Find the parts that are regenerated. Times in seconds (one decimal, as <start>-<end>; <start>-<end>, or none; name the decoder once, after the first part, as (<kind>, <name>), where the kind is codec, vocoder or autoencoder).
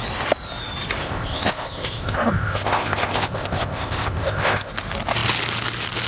1.0-4.7 (codec, ZipCodec)